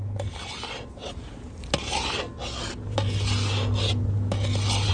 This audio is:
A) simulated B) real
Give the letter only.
B